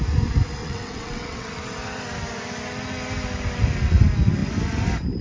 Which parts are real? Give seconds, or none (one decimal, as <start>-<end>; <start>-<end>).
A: 0.0-0.6; 1.5-5.2